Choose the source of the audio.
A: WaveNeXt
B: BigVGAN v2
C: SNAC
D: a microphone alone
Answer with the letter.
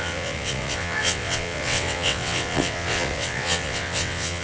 A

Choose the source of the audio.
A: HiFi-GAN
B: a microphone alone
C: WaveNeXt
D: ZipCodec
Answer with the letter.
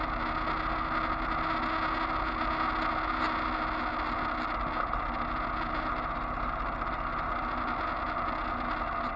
B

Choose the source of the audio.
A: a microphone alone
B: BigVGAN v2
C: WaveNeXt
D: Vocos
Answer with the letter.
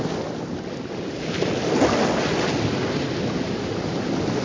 A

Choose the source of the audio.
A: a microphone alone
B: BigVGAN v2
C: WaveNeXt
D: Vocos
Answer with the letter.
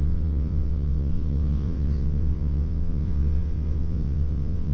C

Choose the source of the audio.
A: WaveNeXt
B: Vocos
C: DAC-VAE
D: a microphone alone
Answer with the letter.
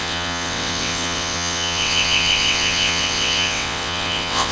A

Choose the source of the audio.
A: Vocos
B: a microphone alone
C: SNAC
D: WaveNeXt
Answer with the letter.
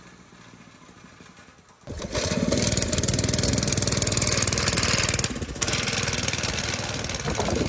B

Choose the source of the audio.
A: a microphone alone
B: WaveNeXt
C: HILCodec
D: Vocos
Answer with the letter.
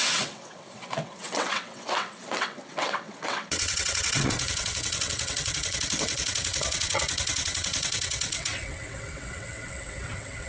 B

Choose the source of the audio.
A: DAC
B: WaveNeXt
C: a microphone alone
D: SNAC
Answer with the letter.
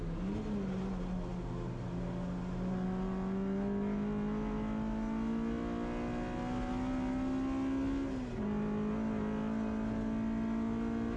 C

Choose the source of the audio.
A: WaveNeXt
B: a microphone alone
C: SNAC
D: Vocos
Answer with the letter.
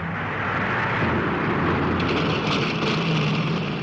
B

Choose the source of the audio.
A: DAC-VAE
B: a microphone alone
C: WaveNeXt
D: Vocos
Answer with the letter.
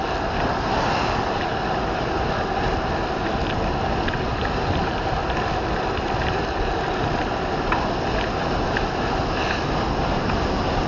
B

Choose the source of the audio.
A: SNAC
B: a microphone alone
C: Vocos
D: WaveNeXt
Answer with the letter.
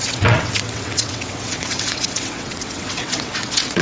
D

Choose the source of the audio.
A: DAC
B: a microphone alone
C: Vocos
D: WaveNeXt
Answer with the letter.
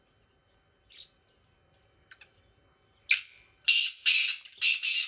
B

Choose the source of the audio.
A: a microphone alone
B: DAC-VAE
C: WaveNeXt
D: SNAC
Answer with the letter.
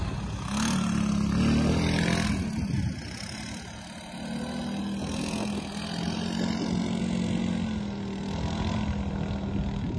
A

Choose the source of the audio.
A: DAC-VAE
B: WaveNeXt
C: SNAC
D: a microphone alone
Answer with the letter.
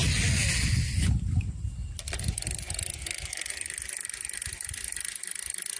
D